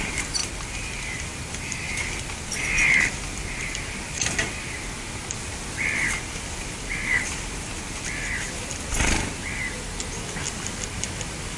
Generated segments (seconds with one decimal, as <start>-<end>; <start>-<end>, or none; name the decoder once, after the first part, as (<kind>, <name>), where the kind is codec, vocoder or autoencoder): 0.0-7.7 (vocoder, BigVGAN v2); 10.5-11.6